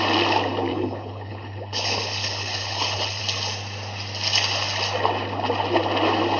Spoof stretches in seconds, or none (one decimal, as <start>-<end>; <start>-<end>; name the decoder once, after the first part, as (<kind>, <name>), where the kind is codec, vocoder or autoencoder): 0.7-3.2 (codec, HILCodec)